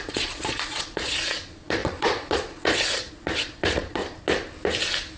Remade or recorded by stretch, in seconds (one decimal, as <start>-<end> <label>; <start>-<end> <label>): 0.0-4.0 remade; 4.0-5.2 recorded

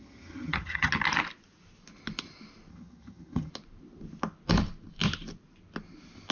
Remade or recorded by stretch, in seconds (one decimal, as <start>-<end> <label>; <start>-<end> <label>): 0.0-0.9 remade; 0.9-2.7 recorded; 2.7-3.5 remade; 3.5-6.3 recorded

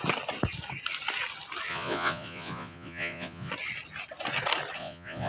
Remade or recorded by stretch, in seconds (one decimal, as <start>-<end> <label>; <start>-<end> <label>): 0.0-1.7 recorded; 1.7-3.5 remade; 3.5-4.8 recorded; 4.8-5.3 remade

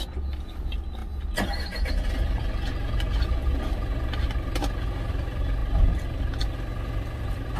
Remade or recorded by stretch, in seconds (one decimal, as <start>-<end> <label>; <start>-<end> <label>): 0.0-7.6 recorded

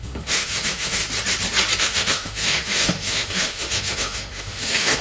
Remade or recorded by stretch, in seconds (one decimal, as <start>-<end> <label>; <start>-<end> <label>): 0.0-1.0 remade; 1.0-1.8 recorded; 1.8-5.0 remade

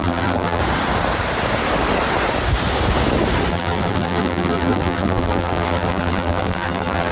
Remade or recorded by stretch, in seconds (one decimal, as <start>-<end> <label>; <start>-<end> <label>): 0.0-0.6 remade; 0.6-3.5 recorded; 3.5-7.1 remade